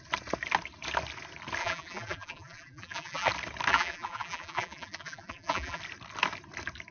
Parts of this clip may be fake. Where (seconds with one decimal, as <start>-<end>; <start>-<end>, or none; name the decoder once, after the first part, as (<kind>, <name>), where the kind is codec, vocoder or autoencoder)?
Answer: 1.6-3.3 (vocoder, BigVGAN v2); 3.7-5.8